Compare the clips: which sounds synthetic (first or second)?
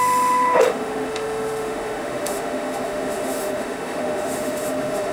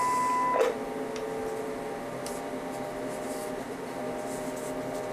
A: first